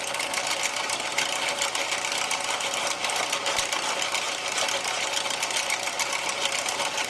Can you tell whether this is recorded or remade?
recorded